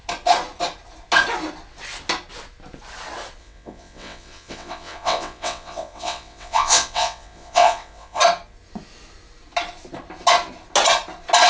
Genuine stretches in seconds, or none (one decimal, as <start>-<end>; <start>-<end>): 0.0-3.4; 8.2-11.5